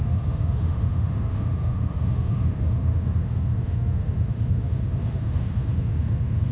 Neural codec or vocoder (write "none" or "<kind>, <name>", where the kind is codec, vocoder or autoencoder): autoencoder, DAC-VAE